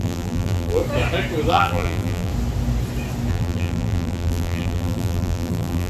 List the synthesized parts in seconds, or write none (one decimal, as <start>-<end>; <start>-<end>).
0.0-0.8; 1.5-2.3; 3.3-5.9